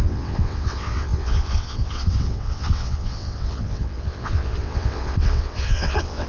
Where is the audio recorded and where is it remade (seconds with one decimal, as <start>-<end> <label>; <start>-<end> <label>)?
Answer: 0.0-6.3 remade

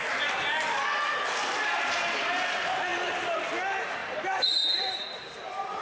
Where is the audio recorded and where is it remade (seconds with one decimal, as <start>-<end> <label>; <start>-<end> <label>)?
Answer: 0.0-4.0 recorded; 4.0-5.8 remade